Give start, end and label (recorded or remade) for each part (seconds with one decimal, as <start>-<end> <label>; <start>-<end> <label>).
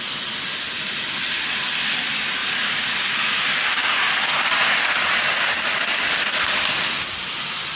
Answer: 0.0-7.8 recorded